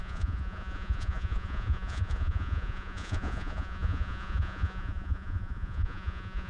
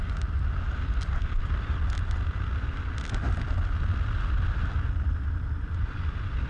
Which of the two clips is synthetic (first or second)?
first